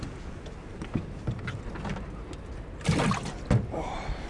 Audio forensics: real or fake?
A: real